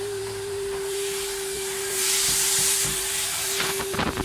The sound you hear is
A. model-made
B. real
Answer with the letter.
A